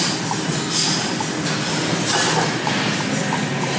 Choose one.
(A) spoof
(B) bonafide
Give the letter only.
B